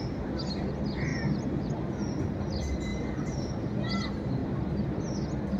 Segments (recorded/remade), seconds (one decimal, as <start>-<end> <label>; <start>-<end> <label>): 0.0-1.1 recorded; 1.1-1.7 remade; 1.7-2.9 recorded; 2.9-3.7 remade; 3.7-5.6 recorded